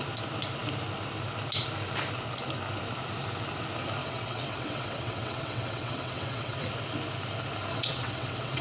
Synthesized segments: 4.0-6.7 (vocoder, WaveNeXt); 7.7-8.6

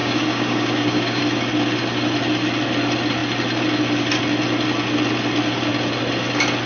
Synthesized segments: 0.0-1.2 (codec, DAC)

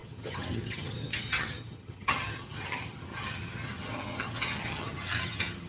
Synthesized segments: 0.0-5.7 (vocoder, HiFi-GAN)

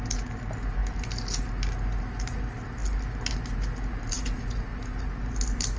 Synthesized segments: none

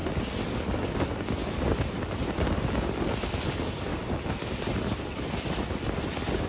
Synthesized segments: none